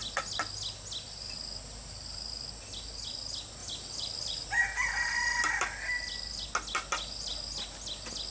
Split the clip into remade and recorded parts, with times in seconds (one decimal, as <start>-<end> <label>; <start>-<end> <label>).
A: 0.0-8.3 recorded